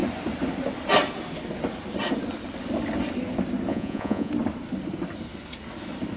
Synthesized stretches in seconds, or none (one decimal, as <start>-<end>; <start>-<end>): 3.7-4.3